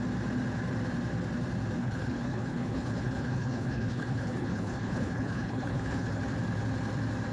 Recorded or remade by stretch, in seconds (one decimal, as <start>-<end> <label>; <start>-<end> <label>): 0.0-1.8 recorded; 1.8-6.2 remade; 6.2-7.3 recorded